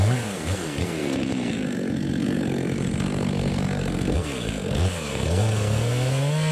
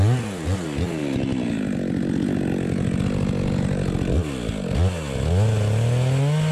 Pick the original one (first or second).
second